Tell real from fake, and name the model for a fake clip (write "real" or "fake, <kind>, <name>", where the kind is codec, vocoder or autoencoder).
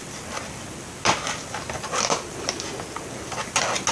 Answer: real